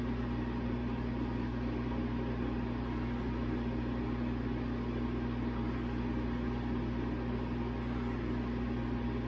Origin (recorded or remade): recorded